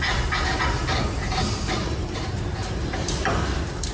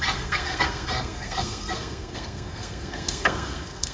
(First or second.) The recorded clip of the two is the first